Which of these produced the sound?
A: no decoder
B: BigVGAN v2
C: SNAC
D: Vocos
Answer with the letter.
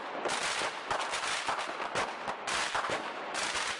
A